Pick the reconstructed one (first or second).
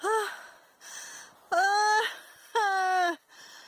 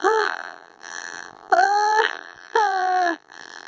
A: second